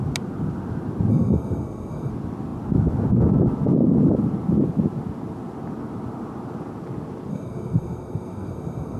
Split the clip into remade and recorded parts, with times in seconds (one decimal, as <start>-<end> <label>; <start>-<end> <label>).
0.0-1.1 recorded; 1.1-2.1 remade; 2.1-7.3 recorded; 7.3-9.0 remade